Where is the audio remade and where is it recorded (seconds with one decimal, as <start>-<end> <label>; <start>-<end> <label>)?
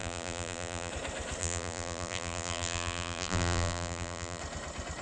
0.0-0.9 remade; 0.9-1.4 recorded; 1.4-4.4 remade; 4.4-5.0 recorded